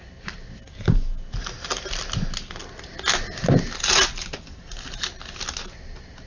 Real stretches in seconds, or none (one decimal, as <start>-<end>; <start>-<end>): 0.0-6.3